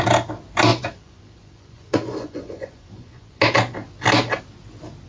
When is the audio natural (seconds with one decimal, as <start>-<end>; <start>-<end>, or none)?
0.0-0.7; 3.4-5.1